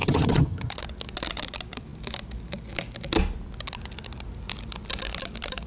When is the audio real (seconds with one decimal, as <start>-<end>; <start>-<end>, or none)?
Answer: 0.7-5.7